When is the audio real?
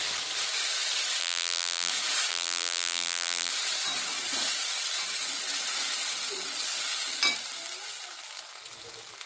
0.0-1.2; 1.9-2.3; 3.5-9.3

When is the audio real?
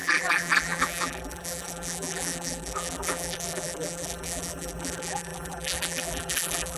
none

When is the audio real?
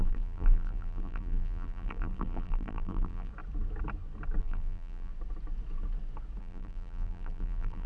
3.3-4.4; 5.1-6.4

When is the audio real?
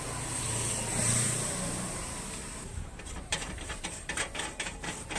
0.0-0.9; 4.0-5.2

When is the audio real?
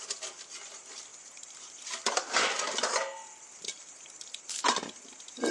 0.0-5.5